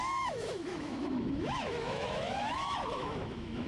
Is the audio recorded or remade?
remade